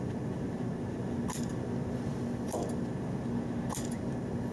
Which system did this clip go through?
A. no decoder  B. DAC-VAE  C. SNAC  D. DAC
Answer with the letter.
A